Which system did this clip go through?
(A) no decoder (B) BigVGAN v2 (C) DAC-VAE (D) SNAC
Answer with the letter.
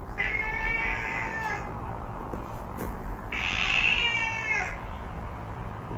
B